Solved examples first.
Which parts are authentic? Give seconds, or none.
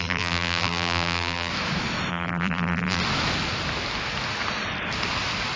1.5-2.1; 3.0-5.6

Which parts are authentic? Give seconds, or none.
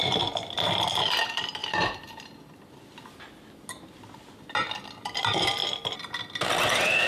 0.0-1.6; 2.4-7.1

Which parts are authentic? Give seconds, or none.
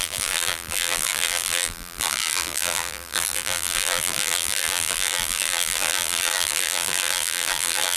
none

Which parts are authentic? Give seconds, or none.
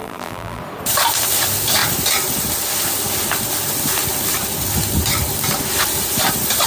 0.6-6.7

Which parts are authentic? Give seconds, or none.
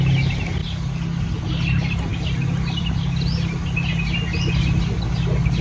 0.0-5.6